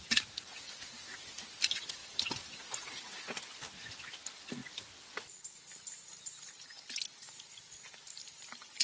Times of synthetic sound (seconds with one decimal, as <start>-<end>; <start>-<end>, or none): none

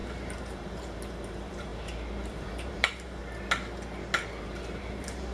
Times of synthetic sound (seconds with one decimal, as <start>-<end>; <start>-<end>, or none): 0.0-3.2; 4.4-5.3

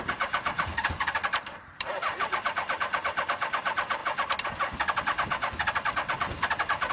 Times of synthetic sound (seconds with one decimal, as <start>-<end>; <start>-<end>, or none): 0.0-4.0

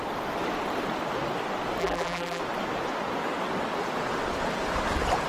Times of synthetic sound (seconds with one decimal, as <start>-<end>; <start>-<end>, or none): 1.8-2.4